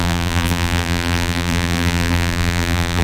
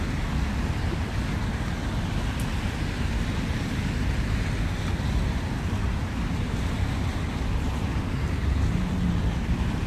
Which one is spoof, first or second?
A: first